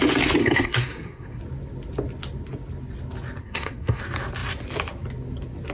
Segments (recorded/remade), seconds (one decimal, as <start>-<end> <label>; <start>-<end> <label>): 0.0-0.4 recorded; 0.4-1.4 remade; 1.4-3.4 recorded; 3.4-4.0 remade; 4.0-5.7 recorded